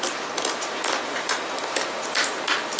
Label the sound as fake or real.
real